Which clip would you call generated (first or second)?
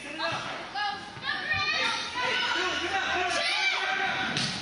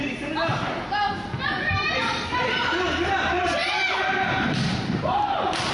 second